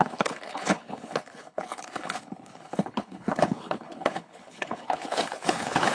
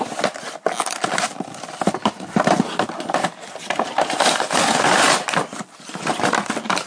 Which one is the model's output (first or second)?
first